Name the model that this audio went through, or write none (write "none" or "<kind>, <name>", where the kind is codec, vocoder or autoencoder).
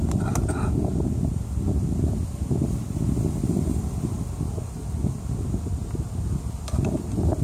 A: none